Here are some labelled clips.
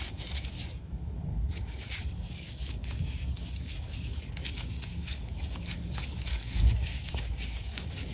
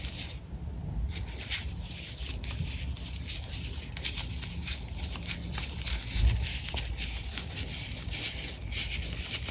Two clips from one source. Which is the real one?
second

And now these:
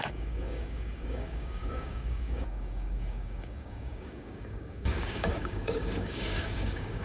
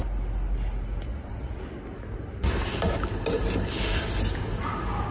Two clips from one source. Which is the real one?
second